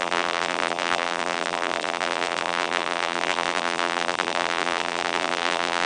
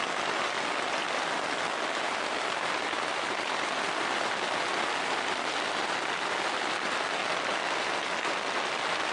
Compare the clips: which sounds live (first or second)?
second